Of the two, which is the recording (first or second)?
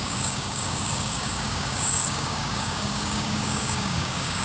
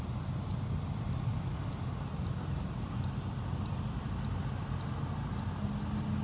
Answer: second